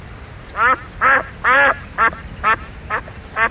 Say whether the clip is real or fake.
real